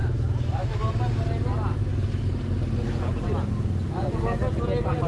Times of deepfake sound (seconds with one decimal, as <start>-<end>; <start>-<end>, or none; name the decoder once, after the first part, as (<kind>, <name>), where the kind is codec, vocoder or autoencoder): 0.0-0.8 (autoencoder, DAC-VAE)